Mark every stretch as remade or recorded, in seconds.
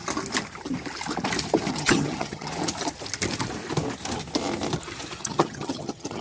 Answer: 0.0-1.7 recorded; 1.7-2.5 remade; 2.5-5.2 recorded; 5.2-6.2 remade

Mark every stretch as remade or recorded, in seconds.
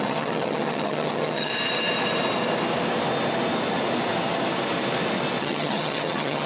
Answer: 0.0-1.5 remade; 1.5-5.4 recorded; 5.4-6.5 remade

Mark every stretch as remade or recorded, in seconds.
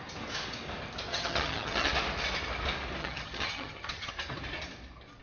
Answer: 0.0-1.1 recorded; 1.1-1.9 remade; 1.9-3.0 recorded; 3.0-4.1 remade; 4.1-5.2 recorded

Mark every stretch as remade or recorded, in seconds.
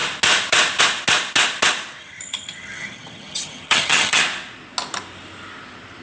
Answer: 0.0-2.0 recorded; 2.0-4.2 remade; 4.2-6.0 recorded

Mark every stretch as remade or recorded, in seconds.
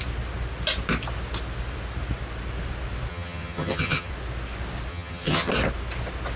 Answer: 0.0-3.1 recorded; 3.1-4.1 remade; 4.1-4.9 recorded; 4.9-5.5 remade; 5.5-6.4 recorded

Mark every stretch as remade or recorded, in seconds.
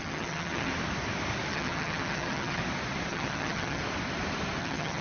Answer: 0.0-0.7 remade; 0.7-1.5 recorded; 1.5-2.6 remade; 2.6-3.1 recorded; 3.1-3.8 remade; 3.8-4.6 recorded; 4.6-5.0 remade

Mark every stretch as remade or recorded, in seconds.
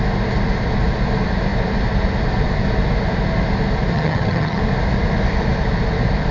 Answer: 0.0-3.9 recorded; 3.9-4.6 remade; 4.6-6.3 recorded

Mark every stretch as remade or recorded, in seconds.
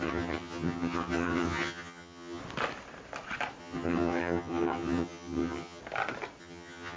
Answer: 0.0-2.4 remade; 2.4-3.6 recorded; 3.6-5.8 remade; 5.8-6.4 recorded; 6.4-7.0 remade